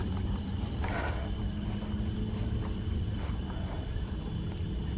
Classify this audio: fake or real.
real